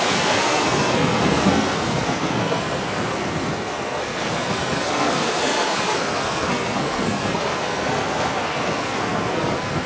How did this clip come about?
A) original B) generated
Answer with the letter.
B